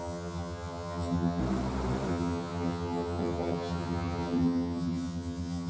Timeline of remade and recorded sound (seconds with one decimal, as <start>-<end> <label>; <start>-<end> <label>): 0.0-1.4 remade; 1.4-2.1 recorded; 2.1-5.7 remade